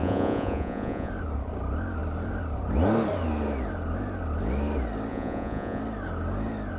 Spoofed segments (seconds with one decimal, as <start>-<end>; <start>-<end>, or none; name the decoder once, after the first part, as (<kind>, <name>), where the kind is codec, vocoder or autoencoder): 0.0-1.1 (vocoder, Vocos); 5.1-5.8